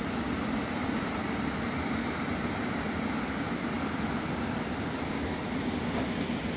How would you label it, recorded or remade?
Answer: remade